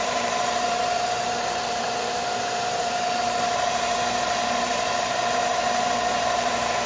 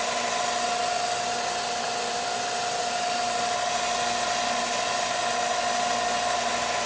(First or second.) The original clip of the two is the second